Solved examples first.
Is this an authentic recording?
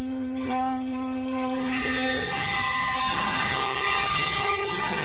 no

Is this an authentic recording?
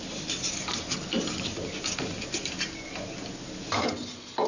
yes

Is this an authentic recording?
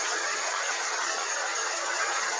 no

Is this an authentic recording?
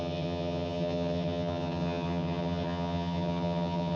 no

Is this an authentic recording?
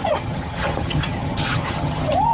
no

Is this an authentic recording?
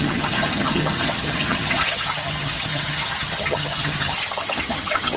no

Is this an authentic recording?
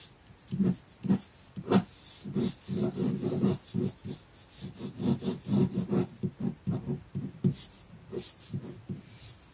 yes